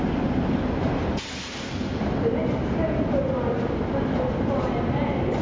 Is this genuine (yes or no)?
yes